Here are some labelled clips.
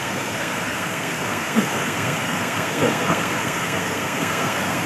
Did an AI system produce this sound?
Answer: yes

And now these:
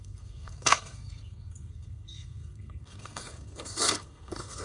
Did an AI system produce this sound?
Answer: yes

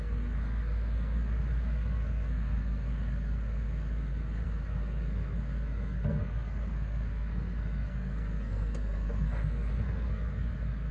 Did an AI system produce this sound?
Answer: yes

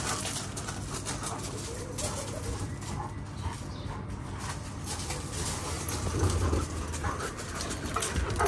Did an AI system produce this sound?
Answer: no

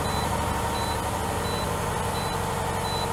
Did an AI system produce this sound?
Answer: no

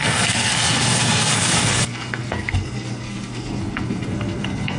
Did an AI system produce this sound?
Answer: yes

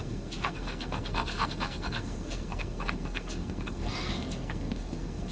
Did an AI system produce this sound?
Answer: yes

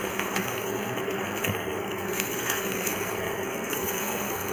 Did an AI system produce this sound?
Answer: yes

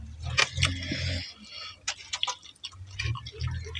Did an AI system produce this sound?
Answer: no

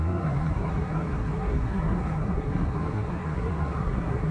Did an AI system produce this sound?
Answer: yes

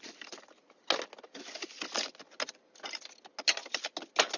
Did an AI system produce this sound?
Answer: no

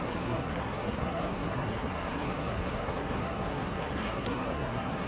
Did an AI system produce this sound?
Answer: yes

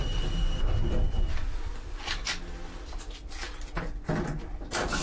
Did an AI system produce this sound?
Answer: no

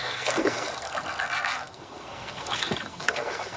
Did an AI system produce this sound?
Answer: yes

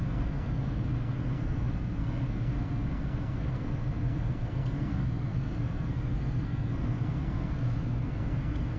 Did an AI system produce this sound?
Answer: yes